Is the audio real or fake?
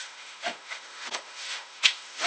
fake